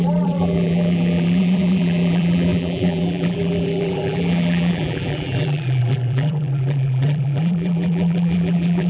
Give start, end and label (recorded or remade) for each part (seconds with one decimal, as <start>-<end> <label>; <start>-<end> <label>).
0.0-8.9 remade